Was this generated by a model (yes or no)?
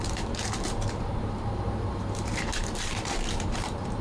yes